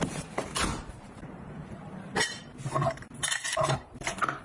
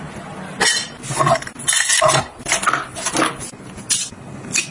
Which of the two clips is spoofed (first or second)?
first